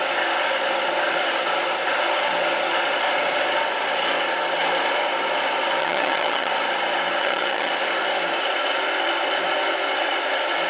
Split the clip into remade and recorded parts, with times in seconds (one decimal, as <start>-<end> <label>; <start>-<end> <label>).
0.0-5.8 recorded; 5.8-6.5 remade; 6.5-7.2 recorded; 7.2-7.7 remade; 7.7-10.7 recorded